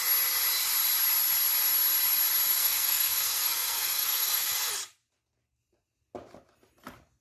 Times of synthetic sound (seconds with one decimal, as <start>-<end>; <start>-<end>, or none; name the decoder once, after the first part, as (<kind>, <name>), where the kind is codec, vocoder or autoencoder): 2.5-4.7 (codec, SNAC)